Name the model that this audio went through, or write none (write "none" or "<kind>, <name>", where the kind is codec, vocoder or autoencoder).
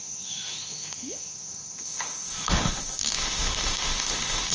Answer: autoencoder, DAC-VAE